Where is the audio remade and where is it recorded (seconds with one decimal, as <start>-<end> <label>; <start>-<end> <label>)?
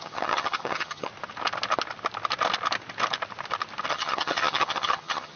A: 0.0-1.1 remade; 1.1-3.9 recorded; 3.9-5.4 remade